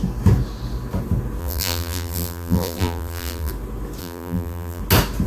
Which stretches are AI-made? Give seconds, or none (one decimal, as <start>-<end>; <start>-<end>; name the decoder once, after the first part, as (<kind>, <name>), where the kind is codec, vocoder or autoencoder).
1.4-3.5 (vocoder, BigVGAN v2); 4.0-4.8